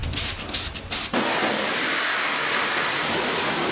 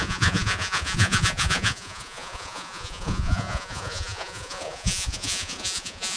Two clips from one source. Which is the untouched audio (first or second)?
first